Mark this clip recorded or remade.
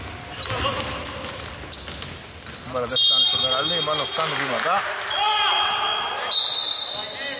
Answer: recorded